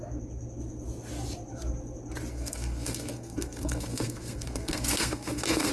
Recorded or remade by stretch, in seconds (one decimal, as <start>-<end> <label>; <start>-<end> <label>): 0.0-2.3 recorded; 2.3-5.7 remade